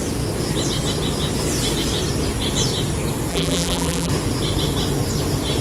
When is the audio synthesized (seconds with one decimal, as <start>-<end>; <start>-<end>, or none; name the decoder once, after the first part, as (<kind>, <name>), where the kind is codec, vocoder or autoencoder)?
3.3-4.1 (vocoder, BigVGAN v2)